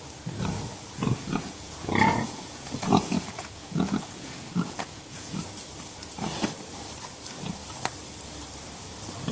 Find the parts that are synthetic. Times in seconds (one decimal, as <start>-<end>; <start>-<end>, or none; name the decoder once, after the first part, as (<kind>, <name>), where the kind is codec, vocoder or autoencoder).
0.9-5.4 (vocoder, Vocos)